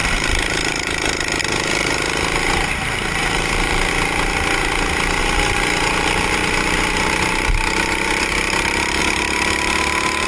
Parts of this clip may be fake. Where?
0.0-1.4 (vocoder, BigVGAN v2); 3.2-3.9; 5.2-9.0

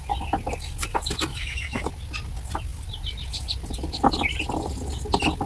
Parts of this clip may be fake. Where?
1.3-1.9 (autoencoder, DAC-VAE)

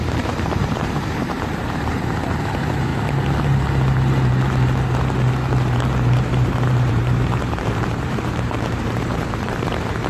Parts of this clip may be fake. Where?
0.0-2.9 (vocoder, BigVGAN v2); 6.3-10.1